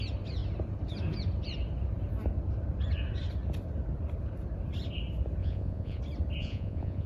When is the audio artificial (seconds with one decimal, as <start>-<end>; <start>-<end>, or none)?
5.4-6.0; 6.4-7.1